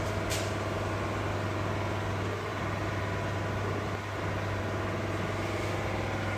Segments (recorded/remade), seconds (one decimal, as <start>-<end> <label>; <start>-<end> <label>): 0.0-6.4 recorded